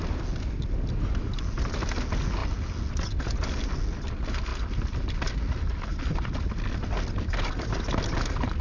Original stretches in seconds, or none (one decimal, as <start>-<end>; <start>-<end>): 0.0-8.6